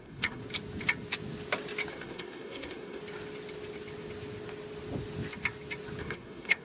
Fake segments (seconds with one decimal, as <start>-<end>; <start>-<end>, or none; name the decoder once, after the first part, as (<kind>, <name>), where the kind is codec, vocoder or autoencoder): 0.0-0.4 (codec, SNAC); 1.9-3.0; 6.0-6.6